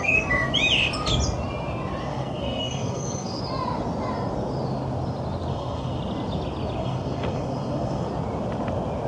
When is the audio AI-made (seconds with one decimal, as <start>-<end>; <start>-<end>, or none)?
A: 0.0-0.5; 2.1-3.4; 5.5-6.0; 6.8-8.1